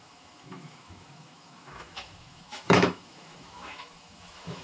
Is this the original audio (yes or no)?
no